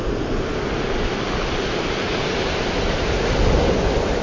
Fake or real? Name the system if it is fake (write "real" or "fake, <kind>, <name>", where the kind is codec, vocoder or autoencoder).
real